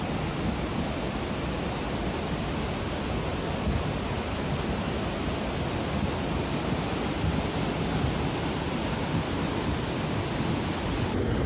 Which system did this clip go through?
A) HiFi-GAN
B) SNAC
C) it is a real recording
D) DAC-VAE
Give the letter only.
C